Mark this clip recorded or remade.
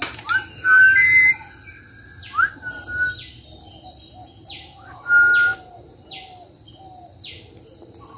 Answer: recorded